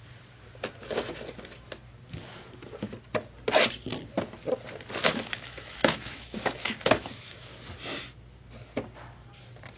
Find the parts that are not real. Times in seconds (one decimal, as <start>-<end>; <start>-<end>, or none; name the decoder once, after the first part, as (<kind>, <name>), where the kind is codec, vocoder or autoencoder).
5.0-7.5 (autoencoder, DAC-VAE)